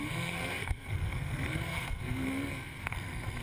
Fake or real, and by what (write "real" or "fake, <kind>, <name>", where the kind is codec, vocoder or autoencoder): fake, codec, SNAC